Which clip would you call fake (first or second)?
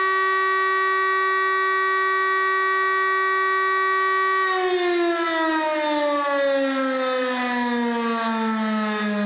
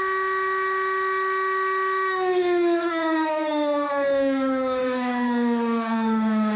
second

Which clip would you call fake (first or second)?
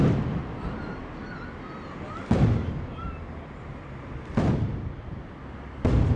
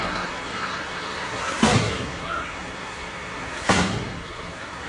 second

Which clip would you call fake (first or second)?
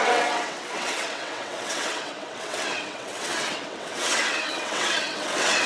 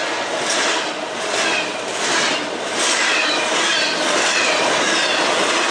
first